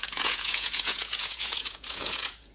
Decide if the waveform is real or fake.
fake